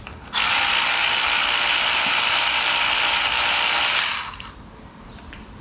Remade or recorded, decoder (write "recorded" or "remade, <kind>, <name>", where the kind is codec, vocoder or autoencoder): recorded